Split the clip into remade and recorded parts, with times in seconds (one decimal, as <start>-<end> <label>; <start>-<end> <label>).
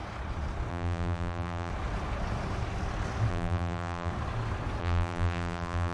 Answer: 0.0-0.7 recorded; 0.7-1.7 remade; 1.7-3.3 recorded; 3.3-4.1 remade; 4.1-4.8 recorded; 4.8-5.9 remade